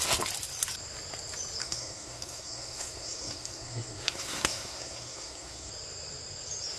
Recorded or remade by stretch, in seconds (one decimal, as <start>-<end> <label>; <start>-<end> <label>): 0.0-1.6 recorded; 1.6-5.7 remade; 5.7-6.8 recorded